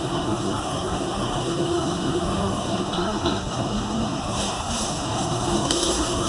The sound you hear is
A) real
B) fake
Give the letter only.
B